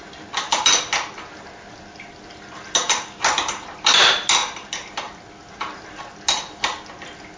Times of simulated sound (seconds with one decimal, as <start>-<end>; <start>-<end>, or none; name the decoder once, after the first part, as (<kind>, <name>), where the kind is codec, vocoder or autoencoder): none